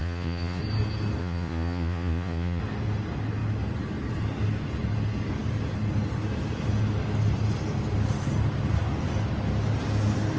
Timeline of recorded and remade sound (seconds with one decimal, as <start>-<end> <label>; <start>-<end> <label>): 0.0-0.6 remade; 0.6-1.2 recorded; 1.2-2.6 remade; 2.6-10.4 recorded

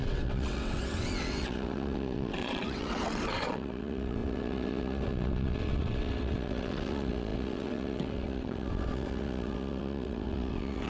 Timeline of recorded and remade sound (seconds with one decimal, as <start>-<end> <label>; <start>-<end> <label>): 0.0-10.9 remade

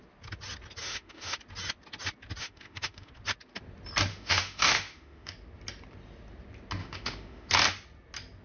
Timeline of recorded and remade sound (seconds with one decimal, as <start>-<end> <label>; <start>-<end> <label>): 0.0-0.8 recorded; 0.8-1.4 remade; 1.4-2.4 recorded; 2.4-3.1 remade; 3.1-4.1 recorded; 4.1-5.3 remade; 5.3-6.8 recorded; 6.8-7.5 remade; 7.5-8.4 recorded